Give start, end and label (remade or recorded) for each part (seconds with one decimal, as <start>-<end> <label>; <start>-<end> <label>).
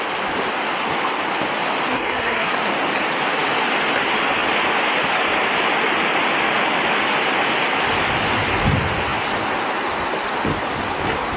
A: 0.0-1.9 recorded; 1.9-2.7 remade; 2.7-11.4 recorded